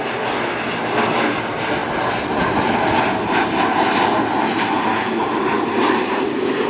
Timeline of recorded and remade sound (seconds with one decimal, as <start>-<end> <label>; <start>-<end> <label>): 0.0-1.8 recorded; 1.8-2.7 remade; 2.7-6.7 recorded